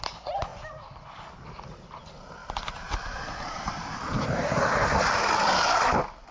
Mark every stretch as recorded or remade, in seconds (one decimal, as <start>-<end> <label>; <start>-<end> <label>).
0.0-2.4 recorded; 2.4-4.3 remade; 4.3-4.8 recorded; 4.8-5.5 remade; 5.5-6.3 recorded